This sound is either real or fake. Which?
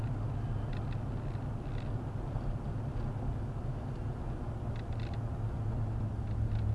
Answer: real